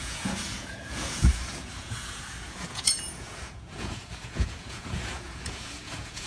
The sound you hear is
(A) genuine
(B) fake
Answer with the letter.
B